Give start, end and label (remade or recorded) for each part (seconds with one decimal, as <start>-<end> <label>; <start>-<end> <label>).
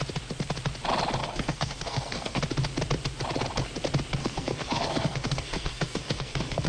0.0-1.2 recorded; 1.2-2.4 remade; 2.4-4.2 recorded; 4.2-6.7 remade